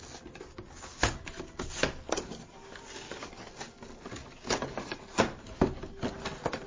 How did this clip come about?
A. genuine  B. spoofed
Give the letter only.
A